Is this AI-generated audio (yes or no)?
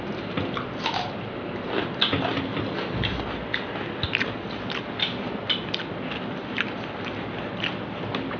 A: no